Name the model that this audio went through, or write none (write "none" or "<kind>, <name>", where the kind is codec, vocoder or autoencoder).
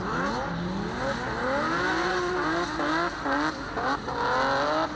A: none